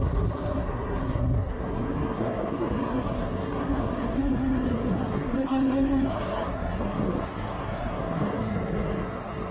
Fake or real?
fake